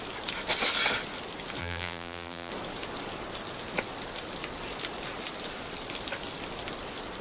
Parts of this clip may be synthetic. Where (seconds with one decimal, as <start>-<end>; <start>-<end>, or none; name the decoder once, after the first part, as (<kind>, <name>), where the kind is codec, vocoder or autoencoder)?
1.6-2.5 (vocoder, BigVGAN v2)